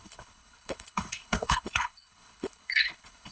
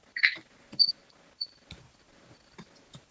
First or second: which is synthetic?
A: first